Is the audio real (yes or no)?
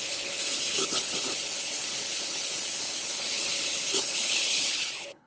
no